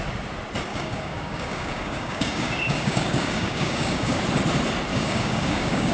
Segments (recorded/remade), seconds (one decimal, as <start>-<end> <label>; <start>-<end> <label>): 0.0-0.7 recorded; 0.7-4.2 remade; 4.2-4.9 recorded; 4.9-5.9 remade